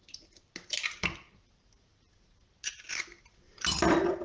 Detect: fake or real real